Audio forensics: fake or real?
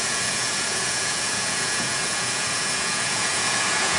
fake